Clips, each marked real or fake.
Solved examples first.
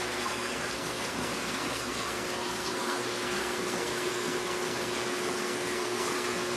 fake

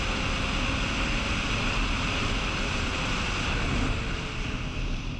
real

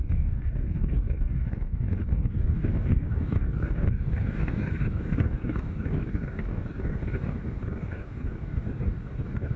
fake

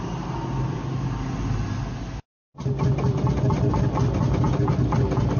real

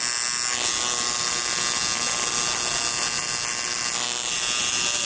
real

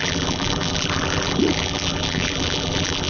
fake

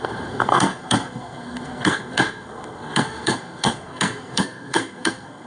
fake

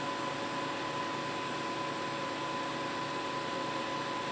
real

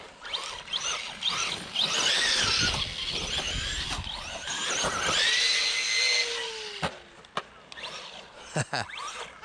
real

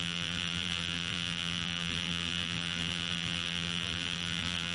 fake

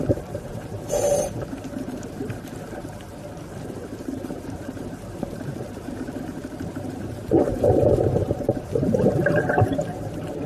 fake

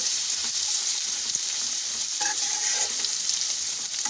fake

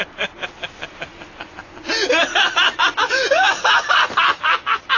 real